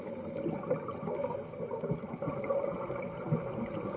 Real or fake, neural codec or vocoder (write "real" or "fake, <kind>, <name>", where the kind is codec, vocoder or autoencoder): real